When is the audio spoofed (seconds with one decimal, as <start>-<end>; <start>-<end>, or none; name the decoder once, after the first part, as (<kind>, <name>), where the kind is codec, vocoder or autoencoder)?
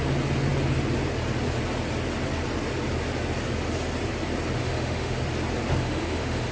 4.6-5.2 (autoencoder, DAC-VAE); 5.8-6.5